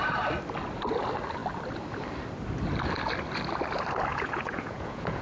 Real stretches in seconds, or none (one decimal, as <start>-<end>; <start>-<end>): 0.0-4.1